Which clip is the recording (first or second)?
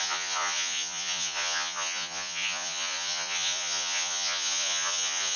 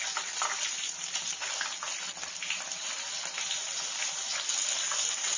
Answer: second